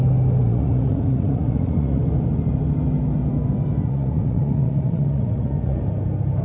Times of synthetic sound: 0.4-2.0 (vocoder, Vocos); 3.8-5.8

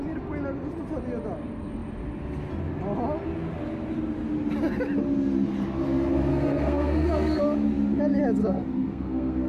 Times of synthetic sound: 6.3-7.4 (codec, SNAC); 8.4-9.5

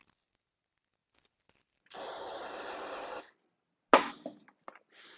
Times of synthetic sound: none

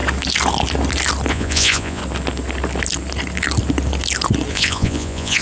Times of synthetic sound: 1.3-2.0 (vocoder, Vocos); 4.5-5.4

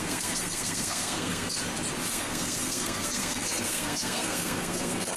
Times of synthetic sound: 0.0-1.6 (codec, SNAC); 2.1-5.2

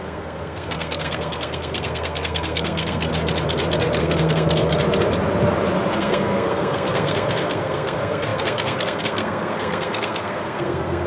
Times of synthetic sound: 0.0-3.1 (codec, SNAC); 4.0-4.7; 5.9-11.1

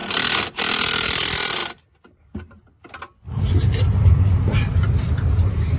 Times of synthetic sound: none

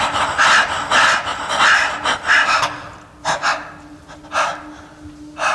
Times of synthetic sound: none